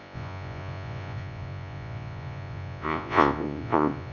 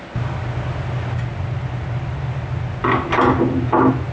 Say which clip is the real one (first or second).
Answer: second